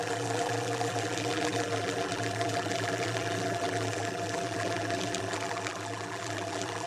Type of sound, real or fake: fake